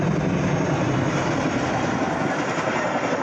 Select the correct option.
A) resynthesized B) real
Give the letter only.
B